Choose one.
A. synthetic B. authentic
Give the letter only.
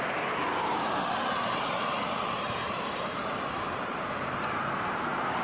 A